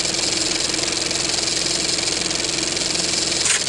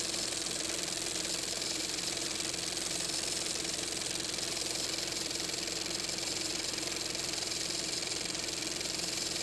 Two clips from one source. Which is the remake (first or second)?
second